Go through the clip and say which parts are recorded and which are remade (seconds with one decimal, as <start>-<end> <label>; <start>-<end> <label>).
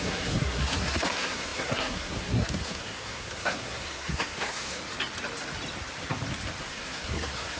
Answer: 0.0-4.8 remade; 4.8-6.6 recorded; 6.6-7.6 remade